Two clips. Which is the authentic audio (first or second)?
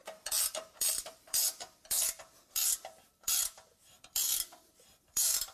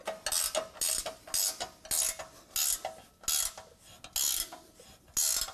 second